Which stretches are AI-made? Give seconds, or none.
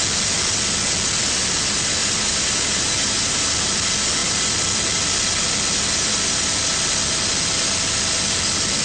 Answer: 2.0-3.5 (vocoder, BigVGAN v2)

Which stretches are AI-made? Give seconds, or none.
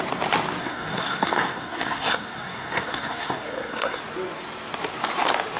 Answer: 0.6-4.0 (codec, SNAC)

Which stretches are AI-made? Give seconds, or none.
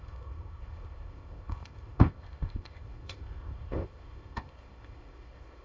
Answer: 0.0-5.6 (codec, ZipCodec)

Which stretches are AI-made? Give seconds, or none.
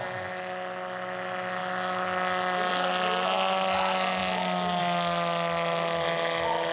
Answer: none